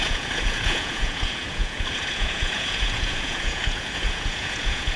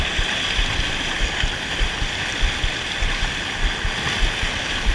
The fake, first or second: first